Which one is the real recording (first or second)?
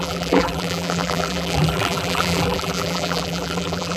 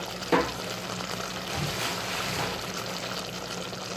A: second